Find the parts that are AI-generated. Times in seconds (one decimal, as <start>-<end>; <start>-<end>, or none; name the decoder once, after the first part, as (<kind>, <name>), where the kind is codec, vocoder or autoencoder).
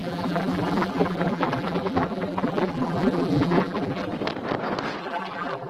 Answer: 0.0-4.1 (vocoder, BigVGAN v2); 5.0-5.7